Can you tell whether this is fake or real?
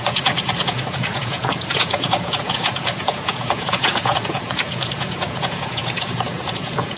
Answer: fake